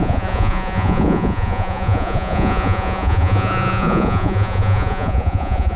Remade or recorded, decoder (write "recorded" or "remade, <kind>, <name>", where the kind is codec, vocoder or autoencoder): remade, vocoder, Vocos